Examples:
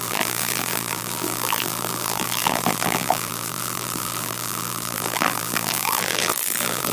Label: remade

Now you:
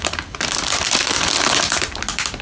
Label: remade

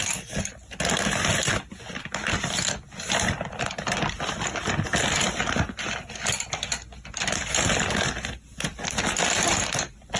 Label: recorded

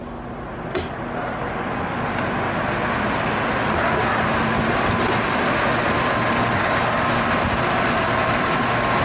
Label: recorded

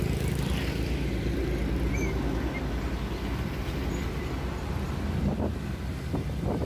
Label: recorded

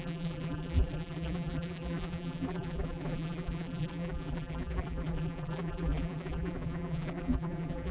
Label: remade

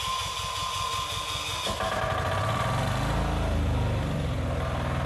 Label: recorded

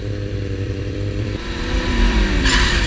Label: remade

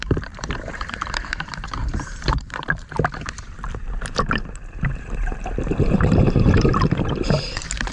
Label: remade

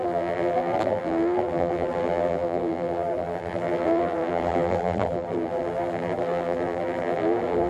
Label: remade